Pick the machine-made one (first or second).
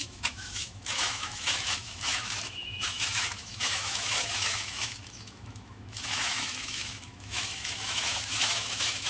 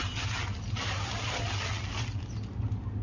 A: first